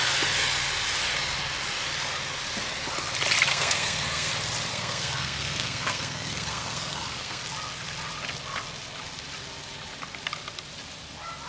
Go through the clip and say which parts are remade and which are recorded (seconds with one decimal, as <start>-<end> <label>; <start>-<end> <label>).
0.0-3.5 recorded; 3.5-4.3 remade; 4.3-4.7 recorded; 4.7-7.4 remade; 7.4-11.5 recorded